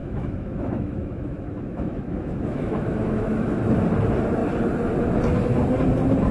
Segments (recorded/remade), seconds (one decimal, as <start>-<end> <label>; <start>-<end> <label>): 0.0-3.6 remade; 3.6-6.3 recorded